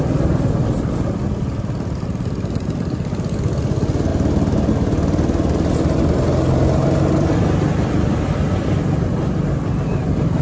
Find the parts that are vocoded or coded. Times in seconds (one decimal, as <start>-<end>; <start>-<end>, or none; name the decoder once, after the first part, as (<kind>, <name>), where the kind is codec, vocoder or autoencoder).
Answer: none

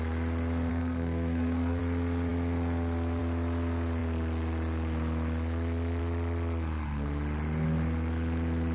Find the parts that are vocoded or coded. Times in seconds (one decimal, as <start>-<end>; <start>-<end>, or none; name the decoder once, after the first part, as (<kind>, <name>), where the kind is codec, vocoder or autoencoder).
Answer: 0.7-1.8 (codec, SNAC)

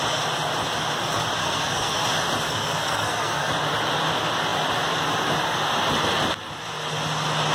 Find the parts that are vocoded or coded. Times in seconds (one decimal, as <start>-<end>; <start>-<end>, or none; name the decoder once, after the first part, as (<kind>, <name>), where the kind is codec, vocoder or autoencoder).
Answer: 1.4-2.0 (codec, SNAC); 2.5-3.5

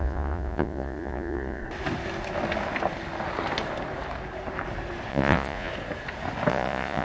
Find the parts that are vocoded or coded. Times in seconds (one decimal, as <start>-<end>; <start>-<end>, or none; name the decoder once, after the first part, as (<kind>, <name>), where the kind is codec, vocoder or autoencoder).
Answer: 0.0-1.6 (vocoder, Vocos); 5.1-5.7; 6.5-7.0